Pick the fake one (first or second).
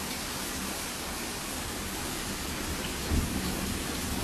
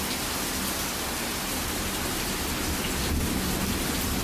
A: first